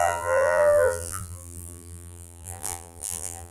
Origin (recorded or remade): remade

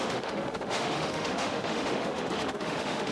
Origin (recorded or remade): remade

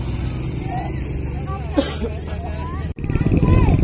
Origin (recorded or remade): recorded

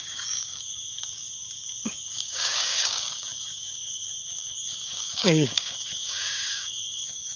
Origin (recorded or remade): remade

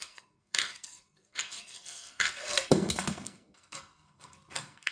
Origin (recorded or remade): remade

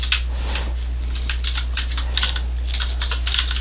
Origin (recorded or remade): recorded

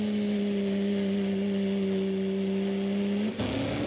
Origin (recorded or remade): recorded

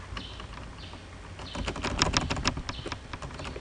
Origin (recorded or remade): recorded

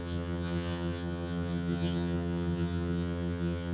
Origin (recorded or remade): remade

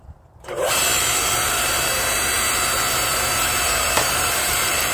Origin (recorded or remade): remade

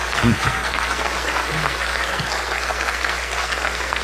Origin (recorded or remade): remade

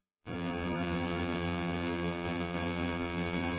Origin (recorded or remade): remade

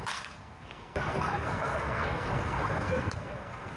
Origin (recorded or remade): remade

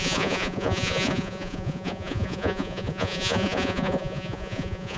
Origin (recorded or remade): remade